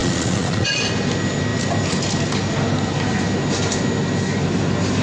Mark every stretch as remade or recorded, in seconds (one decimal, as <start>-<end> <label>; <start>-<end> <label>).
0.0-0.9 remade; 0.9-5.0 recorded